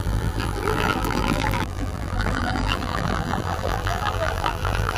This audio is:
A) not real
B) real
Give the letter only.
A